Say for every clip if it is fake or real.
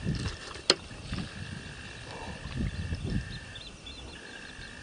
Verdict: real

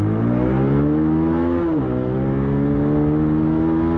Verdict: real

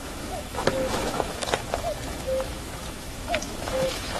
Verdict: fake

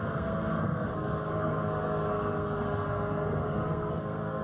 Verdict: fake